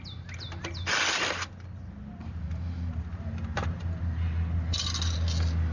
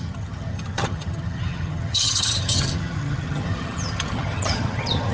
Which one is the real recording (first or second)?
first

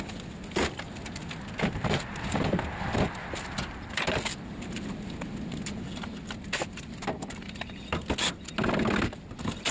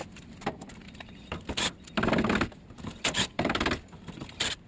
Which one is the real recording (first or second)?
first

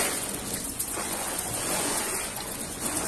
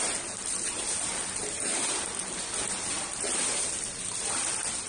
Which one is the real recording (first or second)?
second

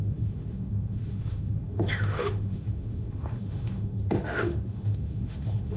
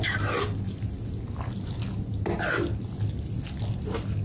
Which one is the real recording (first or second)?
second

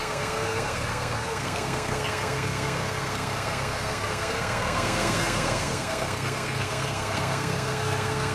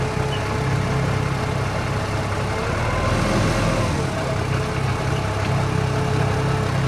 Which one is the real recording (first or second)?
second